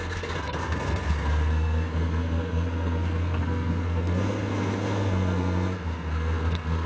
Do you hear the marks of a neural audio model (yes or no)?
yes